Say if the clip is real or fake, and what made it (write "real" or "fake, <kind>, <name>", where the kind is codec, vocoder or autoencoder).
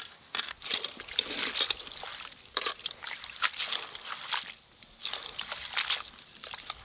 real